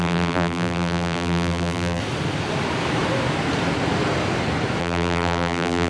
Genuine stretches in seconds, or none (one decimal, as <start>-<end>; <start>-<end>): 2.0-4.8